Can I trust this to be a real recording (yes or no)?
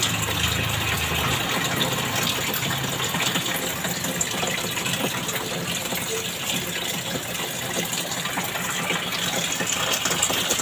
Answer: yes